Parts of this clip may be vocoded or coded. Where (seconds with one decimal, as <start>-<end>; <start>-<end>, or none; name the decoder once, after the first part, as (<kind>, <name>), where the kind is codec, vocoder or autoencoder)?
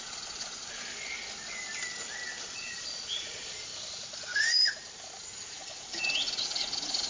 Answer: 0.0-0.8 (vocoder, Vocos); 2.4-3.7; 5.5-7.1